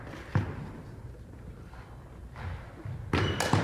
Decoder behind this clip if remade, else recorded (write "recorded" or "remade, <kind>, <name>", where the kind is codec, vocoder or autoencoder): recorded